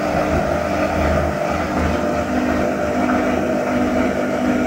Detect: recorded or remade recorded